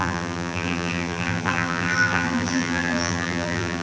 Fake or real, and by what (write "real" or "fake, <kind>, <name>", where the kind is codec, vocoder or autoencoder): fake, vocoder, BigVGAN v2